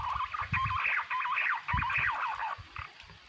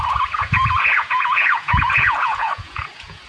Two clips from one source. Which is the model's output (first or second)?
second